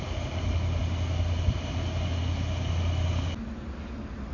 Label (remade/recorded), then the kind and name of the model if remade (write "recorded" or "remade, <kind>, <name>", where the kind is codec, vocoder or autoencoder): recorded